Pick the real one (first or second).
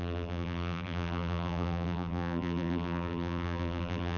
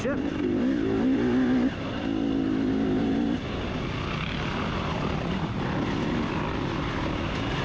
second